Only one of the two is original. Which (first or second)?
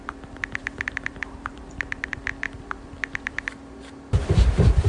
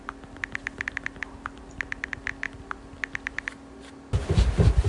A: second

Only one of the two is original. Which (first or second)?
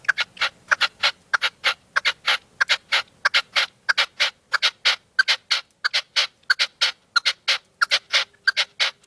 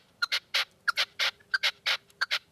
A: first